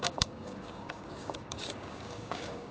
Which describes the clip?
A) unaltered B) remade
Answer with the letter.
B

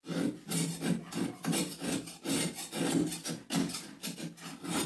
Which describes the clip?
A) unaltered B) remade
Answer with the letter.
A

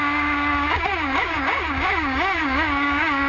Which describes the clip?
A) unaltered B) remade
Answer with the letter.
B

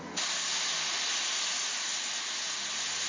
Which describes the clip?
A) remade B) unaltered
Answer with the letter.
B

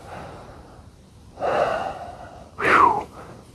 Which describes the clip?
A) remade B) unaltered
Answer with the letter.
A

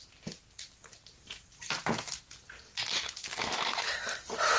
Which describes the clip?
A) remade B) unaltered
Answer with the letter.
B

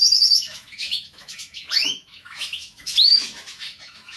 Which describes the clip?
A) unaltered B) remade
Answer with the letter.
B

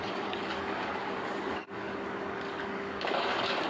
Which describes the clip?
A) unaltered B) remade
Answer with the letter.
B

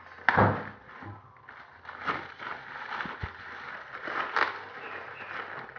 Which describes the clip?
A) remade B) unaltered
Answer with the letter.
B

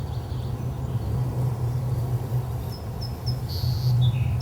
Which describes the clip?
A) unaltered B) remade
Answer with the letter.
A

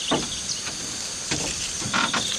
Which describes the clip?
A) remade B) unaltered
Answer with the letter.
A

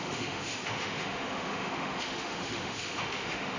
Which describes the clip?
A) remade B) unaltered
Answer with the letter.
A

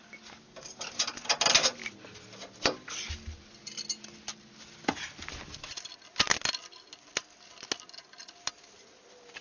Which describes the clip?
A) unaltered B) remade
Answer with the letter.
A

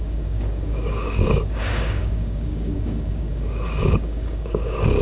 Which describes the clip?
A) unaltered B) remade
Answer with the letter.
B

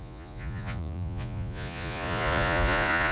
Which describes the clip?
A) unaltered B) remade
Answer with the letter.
B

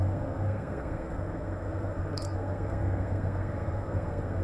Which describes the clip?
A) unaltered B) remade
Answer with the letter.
B